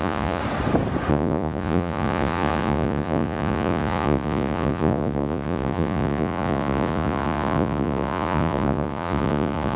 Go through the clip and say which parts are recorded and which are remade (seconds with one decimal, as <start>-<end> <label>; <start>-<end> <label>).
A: 0.0-0.4 remade; 0.4-1.1 recorded; 1.1-9.8 remade